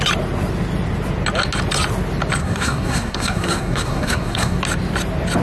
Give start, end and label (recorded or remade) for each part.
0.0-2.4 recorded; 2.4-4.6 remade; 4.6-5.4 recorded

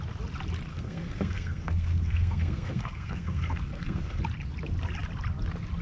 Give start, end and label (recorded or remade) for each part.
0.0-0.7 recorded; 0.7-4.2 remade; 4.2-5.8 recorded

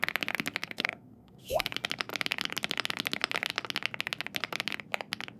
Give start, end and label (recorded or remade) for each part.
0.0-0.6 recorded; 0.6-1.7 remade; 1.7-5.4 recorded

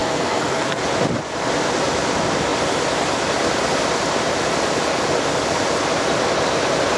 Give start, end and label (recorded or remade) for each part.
0.0-0.8 remade; 0.8-7.0 recorded

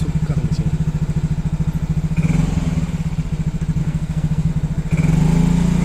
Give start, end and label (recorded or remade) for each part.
0.0-3.8 recorded; 3.8-4.5 remade; 4.5-5.8 recorded

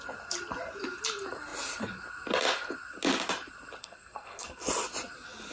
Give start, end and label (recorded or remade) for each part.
0.0-3.8 recorded; 3.8-4.7 remade; 4.7-5.5 recorded

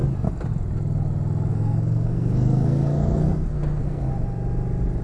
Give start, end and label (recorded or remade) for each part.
0.0-1.5 recorded; 1.5-4.1 remade; 4.1-5.0 recorded